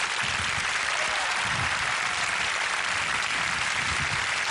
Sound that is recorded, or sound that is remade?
remade